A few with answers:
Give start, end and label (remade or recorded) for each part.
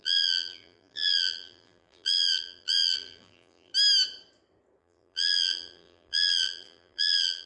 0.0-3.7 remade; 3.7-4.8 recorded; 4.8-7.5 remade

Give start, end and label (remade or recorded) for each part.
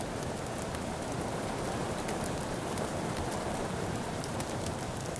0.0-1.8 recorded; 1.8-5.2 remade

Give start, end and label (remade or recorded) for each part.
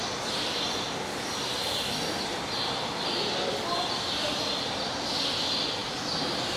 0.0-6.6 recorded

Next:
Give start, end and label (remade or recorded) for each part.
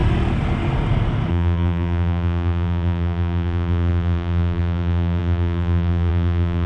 0.0-1.3 recorded; 1.3-6.7 remade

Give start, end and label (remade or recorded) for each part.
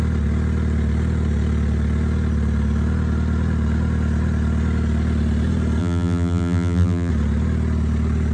0.0-5.8 recorded; 5.8-7.1 remade; 7.1-8.3 recorded